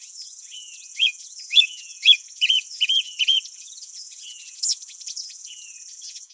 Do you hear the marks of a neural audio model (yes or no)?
yes